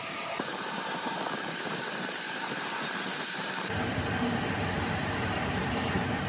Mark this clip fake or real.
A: fake